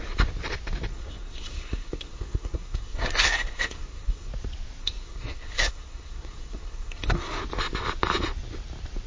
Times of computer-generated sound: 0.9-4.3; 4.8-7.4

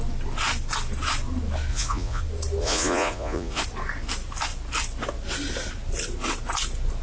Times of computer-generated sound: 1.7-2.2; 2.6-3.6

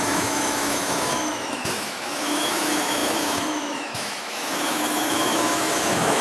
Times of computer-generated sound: 0.0-6.2

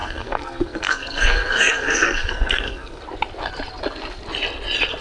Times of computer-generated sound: 0.0-3.0

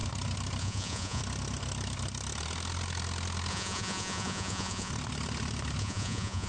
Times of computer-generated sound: 0.6-1.2; 3.5-4.9; 5.8-6.5

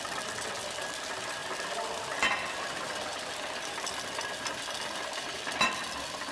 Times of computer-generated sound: none

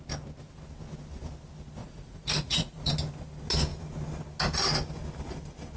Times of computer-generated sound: 1.8-2.9